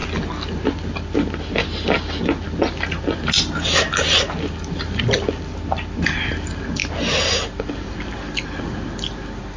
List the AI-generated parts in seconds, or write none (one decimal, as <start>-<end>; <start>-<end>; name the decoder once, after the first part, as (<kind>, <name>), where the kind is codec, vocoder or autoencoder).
none